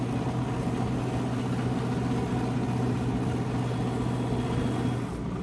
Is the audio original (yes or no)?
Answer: yes